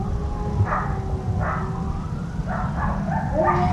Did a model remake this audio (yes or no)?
no